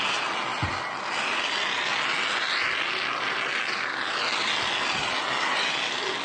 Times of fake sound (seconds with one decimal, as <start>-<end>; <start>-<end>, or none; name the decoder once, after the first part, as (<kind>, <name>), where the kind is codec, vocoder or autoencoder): none